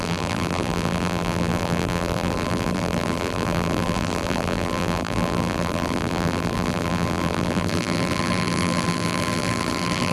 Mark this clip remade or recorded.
remade